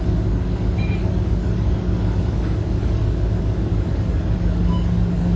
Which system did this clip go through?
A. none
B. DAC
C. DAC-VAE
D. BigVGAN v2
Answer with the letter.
B